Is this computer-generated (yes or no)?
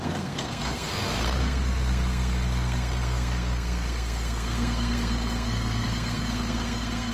yes